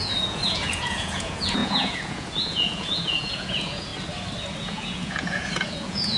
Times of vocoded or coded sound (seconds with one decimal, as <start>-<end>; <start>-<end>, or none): 0.0-3.9; 4.6-6.2

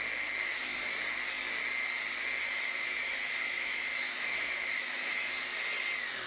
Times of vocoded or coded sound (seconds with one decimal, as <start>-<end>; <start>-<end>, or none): 0.5-1.0; 2.4-5.4

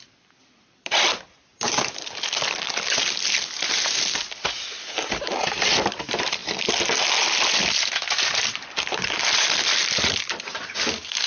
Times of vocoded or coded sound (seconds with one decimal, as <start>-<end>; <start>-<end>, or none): 0.0-11.3

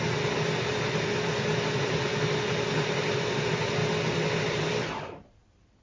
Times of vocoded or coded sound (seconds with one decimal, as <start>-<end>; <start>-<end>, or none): none

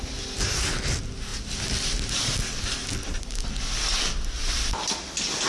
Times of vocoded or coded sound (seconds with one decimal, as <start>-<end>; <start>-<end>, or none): none